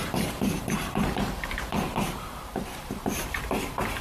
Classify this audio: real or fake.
fake